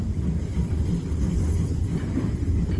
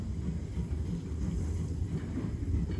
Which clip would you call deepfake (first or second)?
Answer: first